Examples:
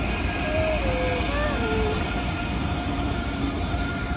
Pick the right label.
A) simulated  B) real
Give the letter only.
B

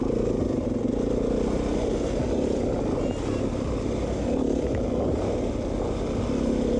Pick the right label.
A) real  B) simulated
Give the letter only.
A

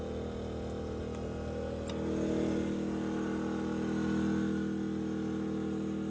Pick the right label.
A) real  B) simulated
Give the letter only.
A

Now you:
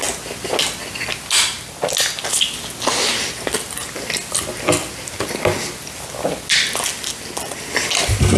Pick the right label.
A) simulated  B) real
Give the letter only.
B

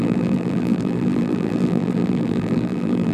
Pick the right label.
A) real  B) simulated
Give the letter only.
B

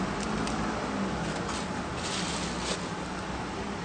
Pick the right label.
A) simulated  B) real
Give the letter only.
B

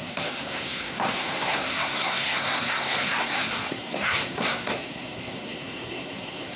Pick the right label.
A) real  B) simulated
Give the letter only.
B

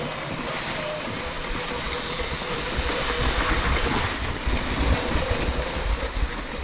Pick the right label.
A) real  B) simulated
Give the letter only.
A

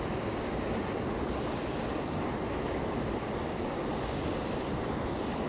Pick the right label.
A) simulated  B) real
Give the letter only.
B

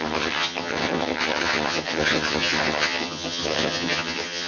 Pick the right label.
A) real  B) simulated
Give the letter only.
B